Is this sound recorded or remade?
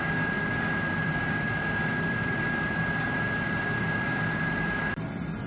remade